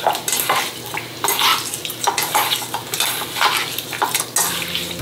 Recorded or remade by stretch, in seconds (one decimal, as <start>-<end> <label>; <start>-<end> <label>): 0.0-5.0 recorded